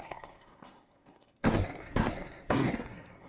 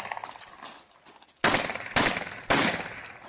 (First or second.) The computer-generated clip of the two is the first